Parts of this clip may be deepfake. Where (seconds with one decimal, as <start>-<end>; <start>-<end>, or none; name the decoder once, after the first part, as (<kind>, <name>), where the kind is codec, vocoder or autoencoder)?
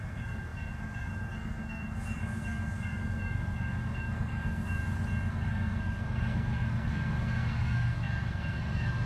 0.0-4.8 (codec, SNAC); 5.3-9.1